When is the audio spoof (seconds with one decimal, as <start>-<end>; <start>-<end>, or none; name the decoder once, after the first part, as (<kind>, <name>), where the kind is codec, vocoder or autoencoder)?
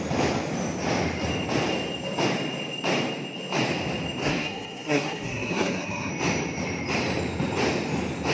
4.2-6.1 (codec, SNAC)